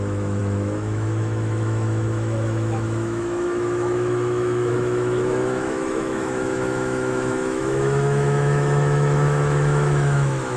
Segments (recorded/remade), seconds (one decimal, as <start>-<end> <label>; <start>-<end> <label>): 0.0-10.6 remade